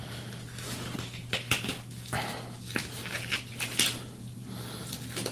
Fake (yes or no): no